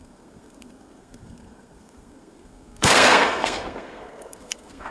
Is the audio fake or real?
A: fake